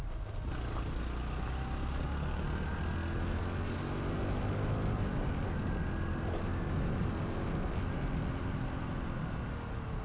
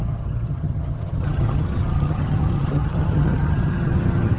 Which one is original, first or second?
first